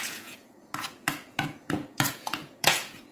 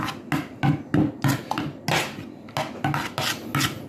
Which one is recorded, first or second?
second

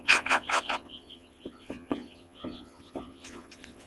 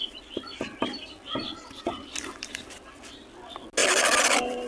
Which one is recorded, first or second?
second